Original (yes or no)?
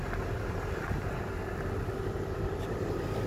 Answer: yes